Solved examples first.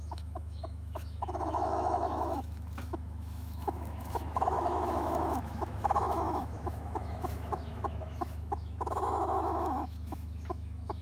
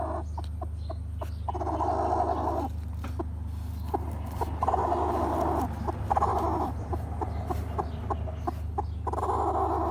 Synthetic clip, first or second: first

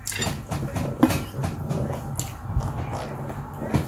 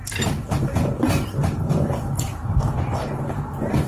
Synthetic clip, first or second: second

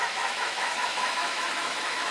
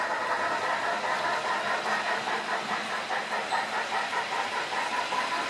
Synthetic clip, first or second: first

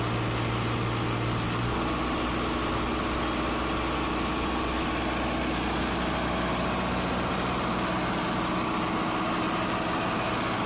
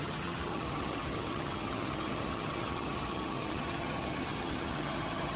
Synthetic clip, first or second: second